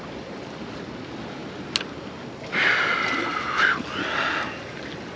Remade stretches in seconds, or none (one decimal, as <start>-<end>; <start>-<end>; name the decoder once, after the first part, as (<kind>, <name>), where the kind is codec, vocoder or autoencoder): none